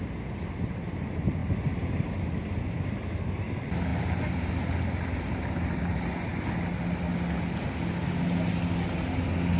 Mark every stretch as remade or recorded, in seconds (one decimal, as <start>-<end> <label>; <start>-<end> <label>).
0.0-9.6 recorded